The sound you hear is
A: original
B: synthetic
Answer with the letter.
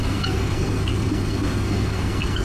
B